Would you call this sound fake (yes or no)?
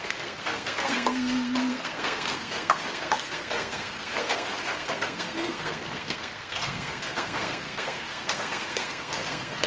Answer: yes